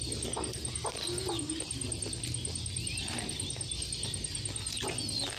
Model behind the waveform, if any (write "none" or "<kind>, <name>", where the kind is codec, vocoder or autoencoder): none